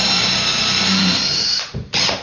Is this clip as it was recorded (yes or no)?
no